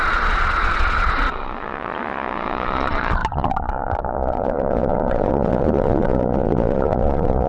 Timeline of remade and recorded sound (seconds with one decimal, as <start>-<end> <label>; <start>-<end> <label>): 0.0-7.5 remade